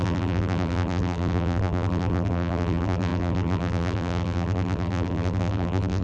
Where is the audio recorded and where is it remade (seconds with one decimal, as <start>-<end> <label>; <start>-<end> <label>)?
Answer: 0.0-6.0 remade